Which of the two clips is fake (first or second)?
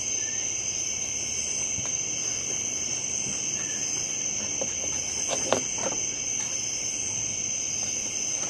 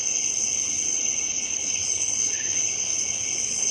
second